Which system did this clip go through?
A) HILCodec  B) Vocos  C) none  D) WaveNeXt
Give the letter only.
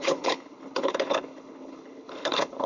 A